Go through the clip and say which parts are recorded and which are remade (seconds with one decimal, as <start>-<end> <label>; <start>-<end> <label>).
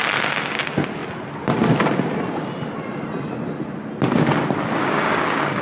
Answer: 0.0-4.8 recorded; 4.8-5.6 remade